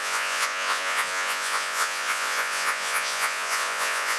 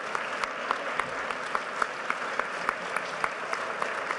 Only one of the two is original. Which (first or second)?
second